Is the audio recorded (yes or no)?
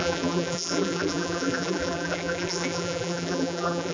no